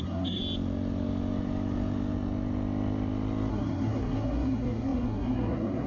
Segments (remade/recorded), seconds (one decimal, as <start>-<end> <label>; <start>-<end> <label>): 0.0-0.4 remade; 0.4-3.5 recorded; 3.5-5.9 remade